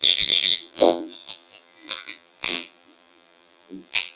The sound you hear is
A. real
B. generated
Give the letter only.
B